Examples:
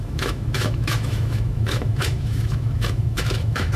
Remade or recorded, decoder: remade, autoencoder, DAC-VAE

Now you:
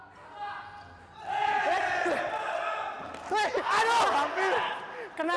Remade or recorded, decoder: recorded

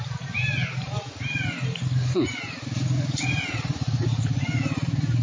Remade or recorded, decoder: recorded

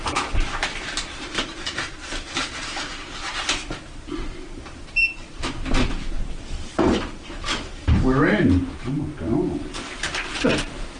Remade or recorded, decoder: remade, vocoder, BigVGAN v2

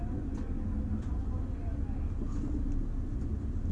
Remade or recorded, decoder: recorded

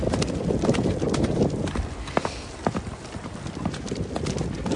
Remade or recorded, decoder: recorded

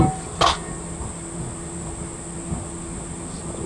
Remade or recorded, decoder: recorded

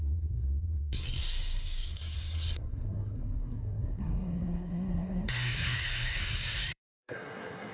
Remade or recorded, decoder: remade, codec, SNAC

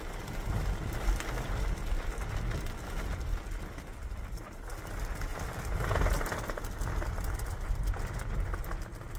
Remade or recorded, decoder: recorded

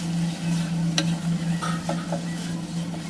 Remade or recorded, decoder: recorded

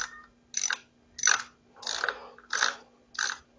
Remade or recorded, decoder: recorded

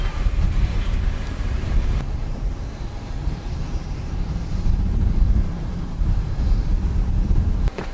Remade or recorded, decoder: remade, vocoder, BigVGAN v2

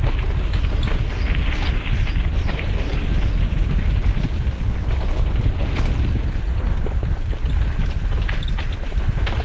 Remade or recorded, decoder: recorded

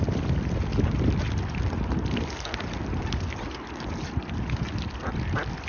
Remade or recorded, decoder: recorded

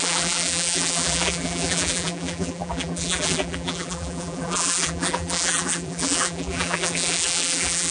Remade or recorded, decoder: remade, vocoder, BigVGAN v2